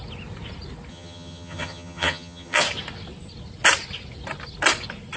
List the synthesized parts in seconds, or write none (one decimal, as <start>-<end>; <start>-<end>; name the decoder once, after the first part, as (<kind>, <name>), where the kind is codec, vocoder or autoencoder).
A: 0.9-2.6 (vocoder, HiFi-GAN)